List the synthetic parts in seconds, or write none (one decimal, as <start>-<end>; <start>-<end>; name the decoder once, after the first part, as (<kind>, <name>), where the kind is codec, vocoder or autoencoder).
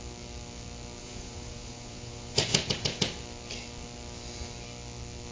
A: 1.0-3.1 (vocoder, Vocos)